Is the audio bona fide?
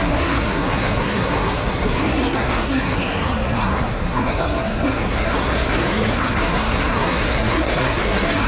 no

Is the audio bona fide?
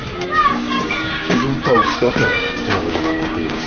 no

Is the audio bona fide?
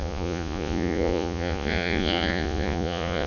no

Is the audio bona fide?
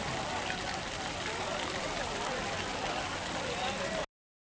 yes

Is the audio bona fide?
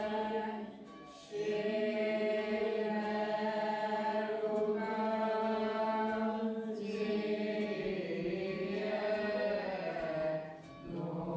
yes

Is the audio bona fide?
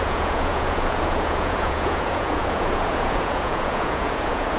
no